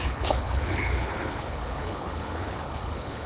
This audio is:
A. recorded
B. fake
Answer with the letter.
B